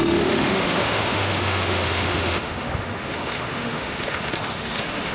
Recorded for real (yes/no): no